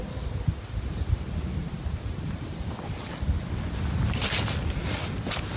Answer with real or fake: real